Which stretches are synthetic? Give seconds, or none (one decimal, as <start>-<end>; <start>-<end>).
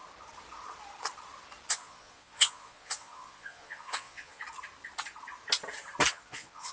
1.7-4.4; 6.1-6.7